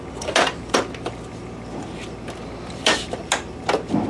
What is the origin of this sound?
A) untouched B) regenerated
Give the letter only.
A